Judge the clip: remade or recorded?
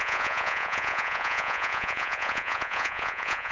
remade